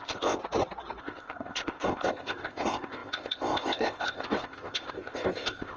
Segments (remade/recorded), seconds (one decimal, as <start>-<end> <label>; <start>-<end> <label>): 0.0-0.4 remade; 0.4-1.0 recorded; 1.0-5.8 remade